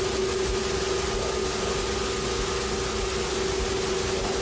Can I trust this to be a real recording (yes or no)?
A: yes